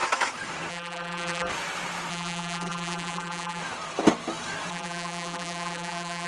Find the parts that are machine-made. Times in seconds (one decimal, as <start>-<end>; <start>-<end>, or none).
0.7-1.5; 2.1-3.6; 4.7-6.3